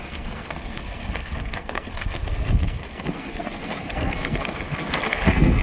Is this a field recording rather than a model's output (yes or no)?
no